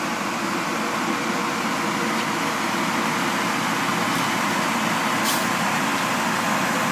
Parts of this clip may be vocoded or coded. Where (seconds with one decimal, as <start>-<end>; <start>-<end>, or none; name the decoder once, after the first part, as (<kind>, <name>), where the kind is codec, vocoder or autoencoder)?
none